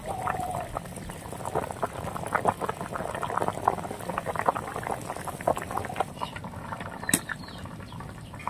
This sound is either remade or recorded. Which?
recorded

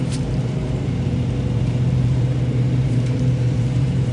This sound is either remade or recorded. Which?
remade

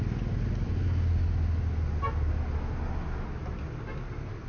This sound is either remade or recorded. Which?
recorded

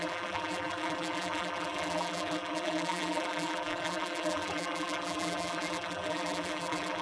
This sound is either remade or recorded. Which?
remade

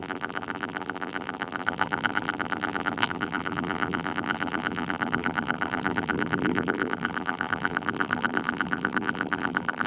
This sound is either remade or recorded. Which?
remade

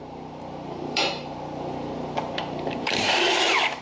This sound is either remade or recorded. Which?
remade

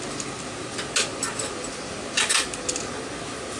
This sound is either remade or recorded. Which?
recorded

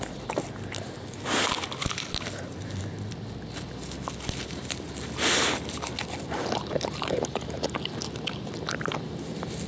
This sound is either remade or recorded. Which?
recorded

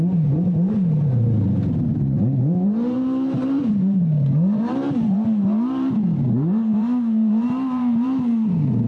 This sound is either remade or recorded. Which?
remade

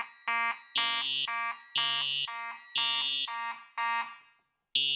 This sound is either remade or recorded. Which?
recorded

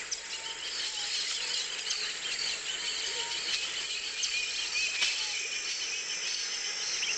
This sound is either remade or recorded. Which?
recorded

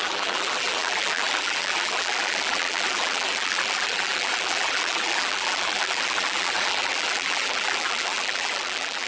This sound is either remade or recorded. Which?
remade